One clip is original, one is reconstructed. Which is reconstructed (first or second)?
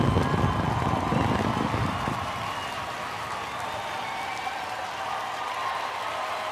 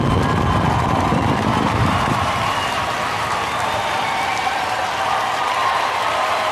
second